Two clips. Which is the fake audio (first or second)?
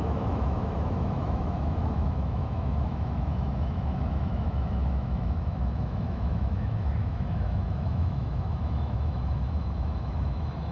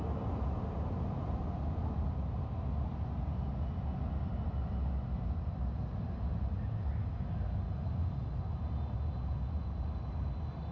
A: first